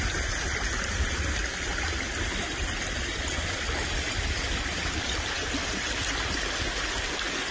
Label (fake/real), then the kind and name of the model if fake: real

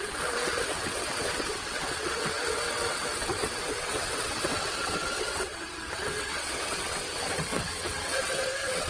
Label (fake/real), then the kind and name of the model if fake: fake, vocoder, WaveNeXt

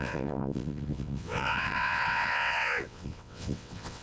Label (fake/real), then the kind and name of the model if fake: fake, vocoder, WaveNeXt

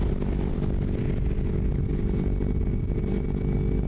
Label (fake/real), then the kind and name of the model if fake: real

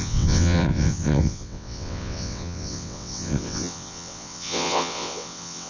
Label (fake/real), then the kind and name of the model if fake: fake, vocoder, WaveNeXt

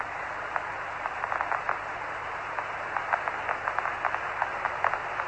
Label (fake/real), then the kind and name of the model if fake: real